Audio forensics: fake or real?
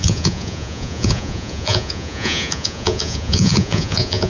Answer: fake